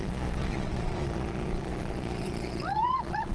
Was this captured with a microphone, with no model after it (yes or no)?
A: no